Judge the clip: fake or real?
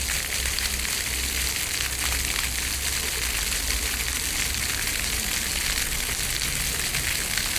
real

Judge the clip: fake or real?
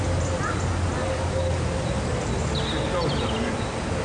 real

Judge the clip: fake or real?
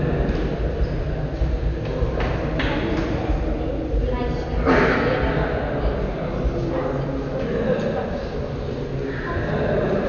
real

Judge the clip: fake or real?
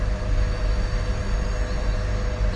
real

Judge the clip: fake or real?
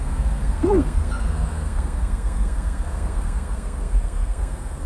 fake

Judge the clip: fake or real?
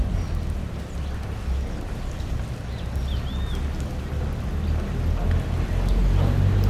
real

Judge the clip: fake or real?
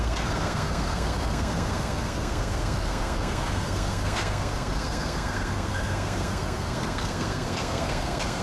fake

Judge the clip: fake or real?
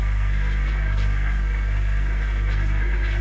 fake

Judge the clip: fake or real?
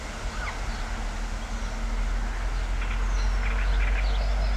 real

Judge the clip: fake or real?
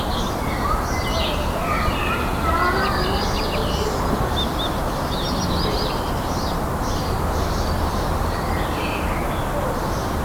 real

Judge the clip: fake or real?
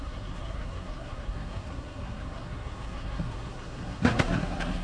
fake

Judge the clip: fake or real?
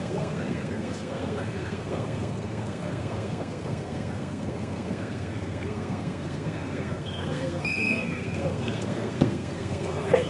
fake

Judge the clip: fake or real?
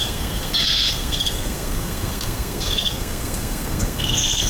fake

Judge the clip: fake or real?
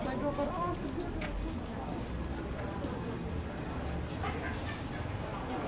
real